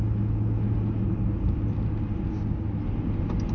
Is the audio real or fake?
real